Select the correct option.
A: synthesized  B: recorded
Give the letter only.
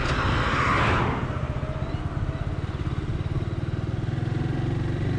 B